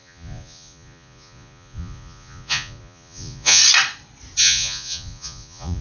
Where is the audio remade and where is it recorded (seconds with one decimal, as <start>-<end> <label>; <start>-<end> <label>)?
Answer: 0.0-3.6 remade; 3.6-4.4 recorded; 4.4-5.8 remade